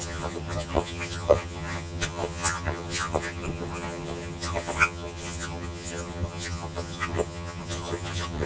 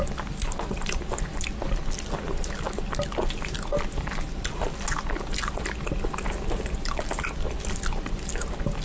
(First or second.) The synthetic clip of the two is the first